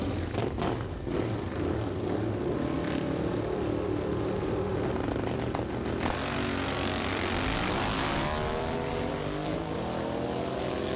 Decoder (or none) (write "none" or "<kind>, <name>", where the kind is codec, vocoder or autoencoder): none